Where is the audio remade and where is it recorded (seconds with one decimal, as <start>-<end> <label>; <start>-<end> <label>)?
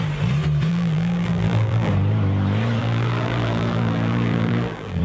0.0-0.7 recorded; 0.7-1.9 remade; 1.9-2.8 recorded; 2.8-5.0 remade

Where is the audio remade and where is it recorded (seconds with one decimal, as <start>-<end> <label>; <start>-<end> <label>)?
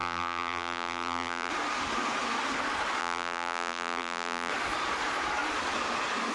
0.0-1.5 remade; 1.5-3.0 recorded; 3.0-4.5 remade; 4.5-6.3 recorded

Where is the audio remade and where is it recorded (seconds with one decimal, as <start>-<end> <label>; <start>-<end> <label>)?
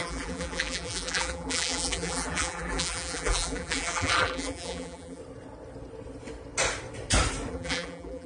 0.0-5.2 remade; 5.2-7.5 recorded; 7.5-8.3 remade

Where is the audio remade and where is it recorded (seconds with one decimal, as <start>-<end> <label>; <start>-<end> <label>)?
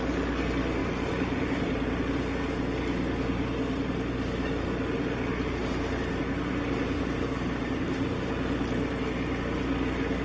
0.0-0.8 recorded; 0.8-2.0 remade; 2.0-5.6 recorded; 5.6-8.3 remade; 8.3-10.2 recorded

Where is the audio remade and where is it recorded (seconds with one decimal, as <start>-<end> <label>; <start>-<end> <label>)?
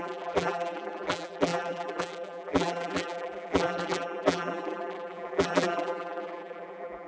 0.0-7.1 remade